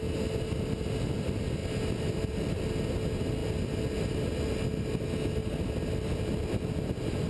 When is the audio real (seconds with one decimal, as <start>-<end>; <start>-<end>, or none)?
0.0-7.3